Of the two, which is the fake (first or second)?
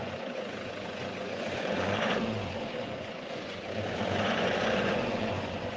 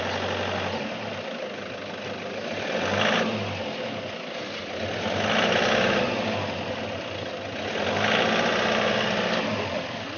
first